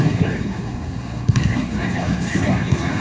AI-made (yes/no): yes